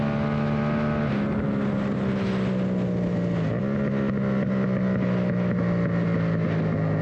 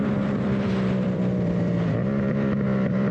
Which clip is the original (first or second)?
first